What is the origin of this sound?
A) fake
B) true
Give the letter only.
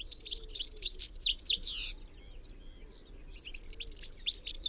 B